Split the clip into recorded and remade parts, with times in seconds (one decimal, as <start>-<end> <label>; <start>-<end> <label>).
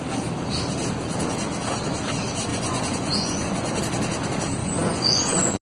0.0-2.5 recorded; 2.5-3.8 remade; 3.8-4.6 recorded; 4.6-5.6 remade